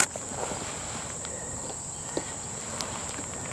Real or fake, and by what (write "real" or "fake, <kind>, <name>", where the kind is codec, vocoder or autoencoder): fake, vocoder, BigVGAN v2